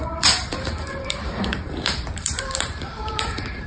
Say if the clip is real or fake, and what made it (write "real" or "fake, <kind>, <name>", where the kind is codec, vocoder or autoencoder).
fake, vocoder, BigVGAN v2